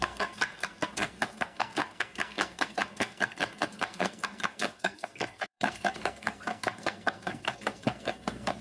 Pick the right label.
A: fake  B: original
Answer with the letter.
A